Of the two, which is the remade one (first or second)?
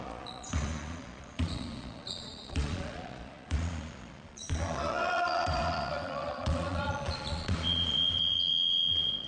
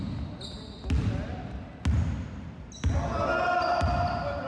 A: first